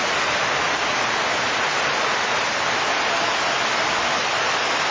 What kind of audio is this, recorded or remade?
recorded